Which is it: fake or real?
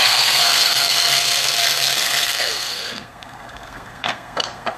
fake